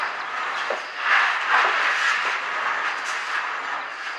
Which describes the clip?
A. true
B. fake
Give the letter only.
A